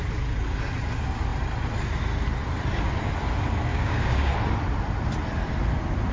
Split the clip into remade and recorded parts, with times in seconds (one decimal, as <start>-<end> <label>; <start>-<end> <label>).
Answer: 0.0-3.7 recorded; 3.7-4.3 remade; 4.3-6.1 recorded